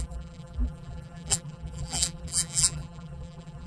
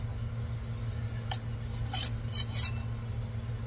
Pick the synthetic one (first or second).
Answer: first